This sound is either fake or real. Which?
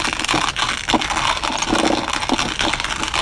real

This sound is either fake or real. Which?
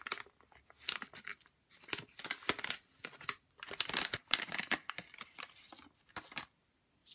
real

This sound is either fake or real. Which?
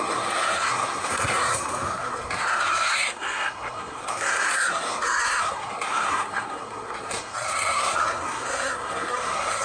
fake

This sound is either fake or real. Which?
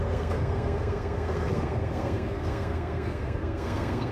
fake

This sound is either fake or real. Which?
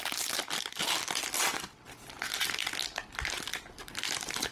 real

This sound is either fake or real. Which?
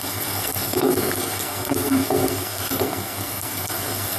fake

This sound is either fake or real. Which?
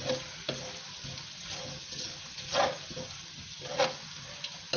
real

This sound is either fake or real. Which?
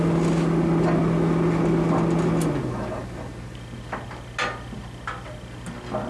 real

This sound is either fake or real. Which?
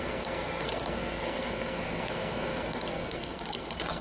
fake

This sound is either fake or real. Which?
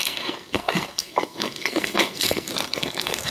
fake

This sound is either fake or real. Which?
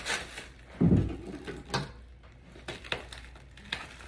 real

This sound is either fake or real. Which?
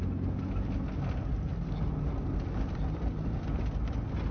real